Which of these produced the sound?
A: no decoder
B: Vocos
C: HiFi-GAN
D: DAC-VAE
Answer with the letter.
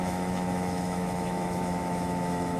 D